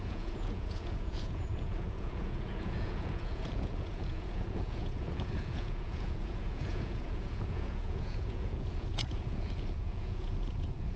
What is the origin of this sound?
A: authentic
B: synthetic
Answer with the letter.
B